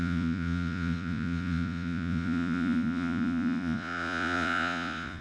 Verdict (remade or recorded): remade